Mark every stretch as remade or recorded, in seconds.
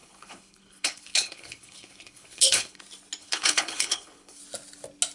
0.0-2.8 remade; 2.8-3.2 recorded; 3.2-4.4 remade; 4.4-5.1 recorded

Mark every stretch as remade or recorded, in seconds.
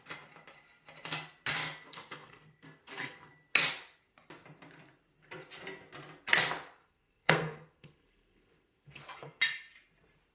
0.0-1.9 recorded; 1.9-3.3 remade; 3.3-6.8 recorded; 6.8-9.4 remade; 9.4-10.3 recorded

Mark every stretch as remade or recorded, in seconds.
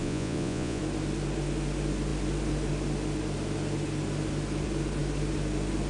0.0-0.8 remade; 0.8-5.9 recorded